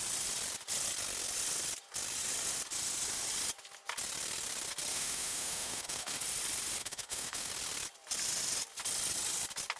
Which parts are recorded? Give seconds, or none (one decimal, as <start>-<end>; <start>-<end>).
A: 0.0-4.9; 6.2-6.8; 7.5-9.8